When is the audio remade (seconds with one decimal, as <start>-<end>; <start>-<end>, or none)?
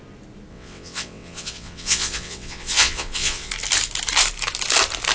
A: 0.5-3.5